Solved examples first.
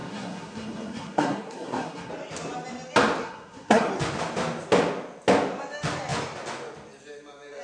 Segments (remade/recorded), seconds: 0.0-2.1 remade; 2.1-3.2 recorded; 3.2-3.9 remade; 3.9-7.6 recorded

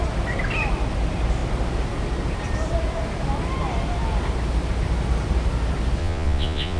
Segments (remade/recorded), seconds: 0.0-6.0 recorded; 6.0-6.8 remade

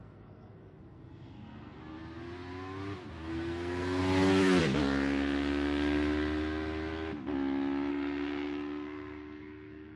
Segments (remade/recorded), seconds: 0.0-1.8 remade; 1.8-3.3 recorded; 3.3-4.0 remade; 4.0-7.9 recorded; 7.9-10.0 remade

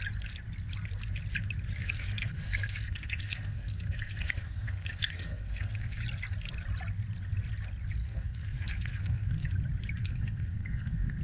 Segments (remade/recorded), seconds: 0.0-1.8 recorded; 1.8-6.0 remade; 6.0-8.0 recorded; 8.0-9.5 remade; 9.5-10.0 recorded; 10.0-11.2 remade

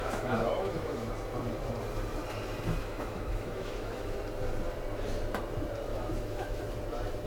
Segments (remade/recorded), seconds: 0.0-1.1 remade; 1.1-2.8 recorded; 2.8-4.2 remade; 4.2-5.9 recorded; 5.9-6.6 remade; 6.6-7.3 recorded

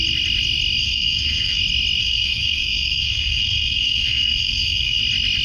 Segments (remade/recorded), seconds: 0.0-0.8 recorded; 0.8-1.6 remade; 1.6-2.0 recorded; 2.0-5.0 remade; 5.0-5.4 recorded